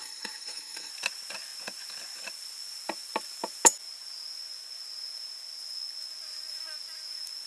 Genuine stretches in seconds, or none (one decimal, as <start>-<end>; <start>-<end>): 0.9-7.5